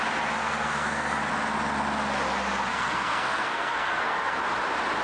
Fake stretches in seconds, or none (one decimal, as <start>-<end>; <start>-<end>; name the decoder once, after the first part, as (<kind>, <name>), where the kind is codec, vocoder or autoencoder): 0.4-1.3 (codec, SNAC); 2.7-4.4